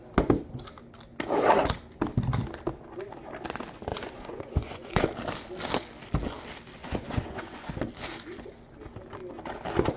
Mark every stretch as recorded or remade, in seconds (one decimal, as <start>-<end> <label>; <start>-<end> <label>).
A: 0.0-3.9 recorded; 3.9-5.0 remade; 5.0-6.8 recorded; 6.8-7.7 remade; 7.7-10.0 recorded